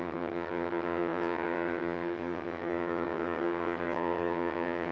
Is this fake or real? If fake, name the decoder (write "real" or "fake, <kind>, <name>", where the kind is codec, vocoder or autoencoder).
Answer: fake, vocoder, HiFi-GAN